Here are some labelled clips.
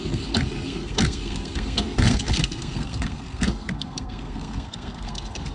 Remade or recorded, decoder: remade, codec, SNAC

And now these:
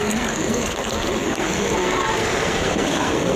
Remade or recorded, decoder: remade, codec, SNAC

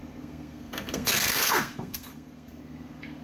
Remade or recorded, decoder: remade, codec, SNAC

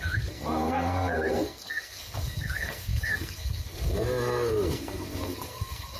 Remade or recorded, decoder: remade, codec, SNAC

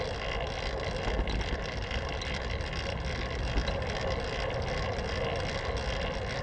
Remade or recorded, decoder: recorded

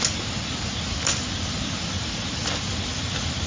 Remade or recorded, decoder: recorded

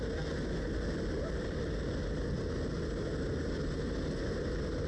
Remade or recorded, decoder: recorded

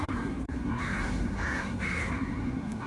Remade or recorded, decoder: remade, codec, SNAC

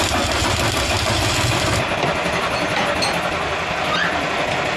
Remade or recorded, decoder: recorded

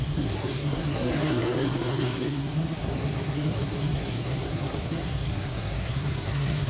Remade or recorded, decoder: remade, codec, SNAC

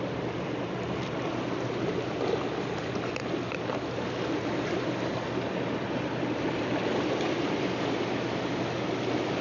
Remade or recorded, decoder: recorded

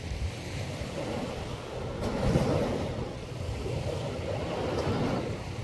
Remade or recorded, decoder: recorded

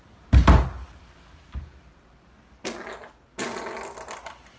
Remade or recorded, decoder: recorded